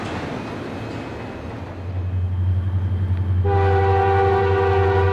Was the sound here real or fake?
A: real